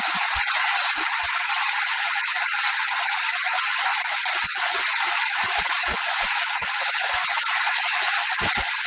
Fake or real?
real